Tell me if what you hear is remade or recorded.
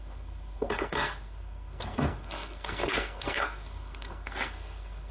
remade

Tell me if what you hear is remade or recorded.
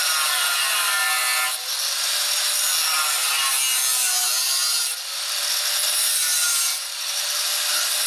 recorded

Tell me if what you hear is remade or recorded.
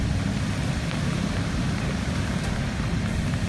recorded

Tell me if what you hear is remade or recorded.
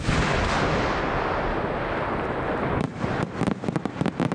recorded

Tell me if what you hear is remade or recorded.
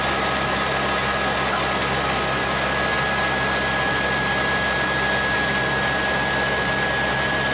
recorded